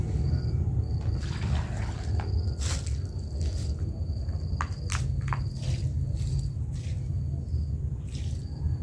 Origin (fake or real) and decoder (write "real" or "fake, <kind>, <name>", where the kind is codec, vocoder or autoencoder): real